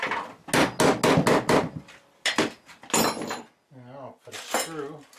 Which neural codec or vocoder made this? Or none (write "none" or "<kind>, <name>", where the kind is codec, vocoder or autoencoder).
none